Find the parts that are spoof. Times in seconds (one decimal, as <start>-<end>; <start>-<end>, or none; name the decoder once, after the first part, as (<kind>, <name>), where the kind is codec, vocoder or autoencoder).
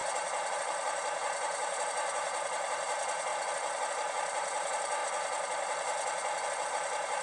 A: 0.0-3.3 (vocoder, BigVGAN v2); 3.9-5.0; 6.7-7.2